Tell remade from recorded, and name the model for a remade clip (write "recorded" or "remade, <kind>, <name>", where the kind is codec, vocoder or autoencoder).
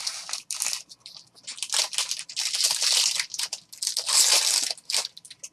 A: recorded